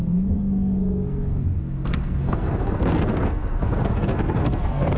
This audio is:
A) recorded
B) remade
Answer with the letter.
B